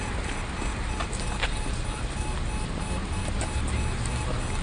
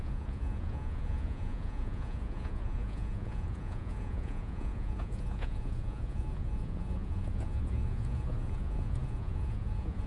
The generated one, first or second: second